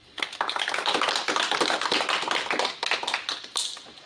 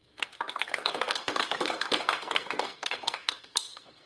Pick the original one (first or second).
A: first